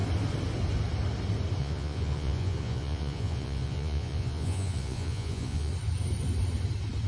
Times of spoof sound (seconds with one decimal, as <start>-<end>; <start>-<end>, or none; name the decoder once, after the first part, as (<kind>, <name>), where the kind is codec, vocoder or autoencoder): 1.6-5.7 (vocoder, Vocos)